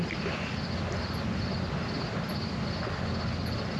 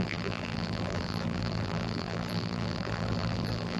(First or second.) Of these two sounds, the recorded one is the first